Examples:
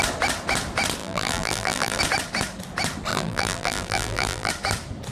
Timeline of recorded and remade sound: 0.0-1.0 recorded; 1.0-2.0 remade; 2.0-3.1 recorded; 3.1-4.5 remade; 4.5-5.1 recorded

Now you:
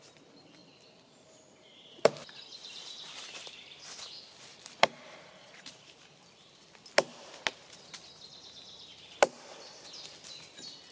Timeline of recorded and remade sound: 0.0-0.6 recorded; 0.6-2.1 remade; 2.1-2.6 recorded; 2.6-3.4 remade; 3.4-4.5 recorded; 4.5-6.0 remade; 6.0-10.9 recorded

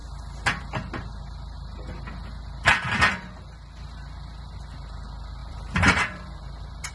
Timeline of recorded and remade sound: 0.0-5.4 recorded; 5.4-6.9 remade

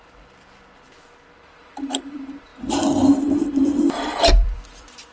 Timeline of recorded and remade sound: 0.0-2.5 remade; 2.5-3.3 recorded; 3.3-5.1 remade

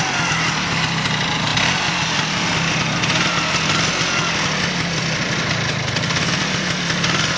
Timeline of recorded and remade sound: 0.0-7.4 recorded